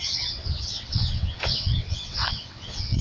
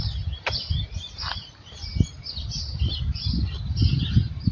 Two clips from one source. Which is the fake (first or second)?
first